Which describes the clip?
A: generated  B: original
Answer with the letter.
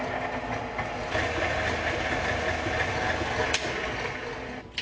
B